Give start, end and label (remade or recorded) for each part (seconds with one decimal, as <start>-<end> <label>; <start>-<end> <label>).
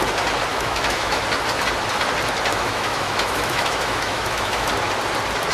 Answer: 0.0-0.5 recorded; 0.5-1.2 remade; 1.2-2.5 recorded; 2.5-4.7 remade; 4.7-5.5 recorded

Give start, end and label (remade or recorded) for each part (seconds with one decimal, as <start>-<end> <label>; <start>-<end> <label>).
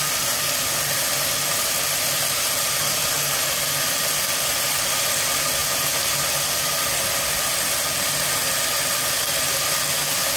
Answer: 0.0-10.4 recorded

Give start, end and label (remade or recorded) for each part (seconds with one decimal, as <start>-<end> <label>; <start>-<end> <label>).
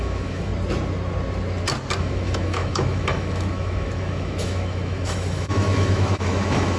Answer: 0.0-0.5 remade; 0.5-2.0 recorded; 2.0-6.8 remade